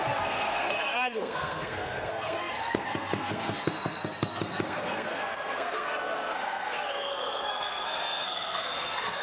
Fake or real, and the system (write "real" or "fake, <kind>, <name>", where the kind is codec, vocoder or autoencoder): fake, codec, SNAC